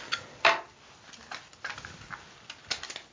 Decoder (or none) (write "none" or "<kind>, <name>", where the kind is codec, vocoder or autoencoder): none